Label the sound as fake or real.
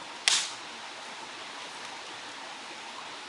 real